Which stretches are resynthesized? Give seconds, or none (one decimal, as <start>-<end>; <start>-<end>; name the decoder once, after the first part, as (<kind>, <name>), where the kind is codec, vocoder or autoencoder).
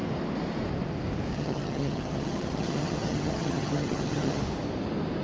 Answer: 1.3-4.4 (vocoder, HiFi-GAN)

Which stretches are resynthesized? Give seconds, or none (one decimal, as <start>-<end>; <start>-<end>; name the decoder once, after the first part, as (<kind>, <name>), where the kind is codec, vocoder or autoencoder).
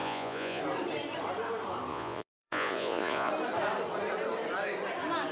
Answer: 0.0-0.6 (vocoder, Vocos); 1.9-3.3